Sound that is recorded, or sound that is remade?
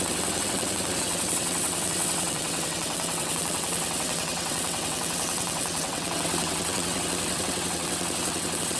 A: remade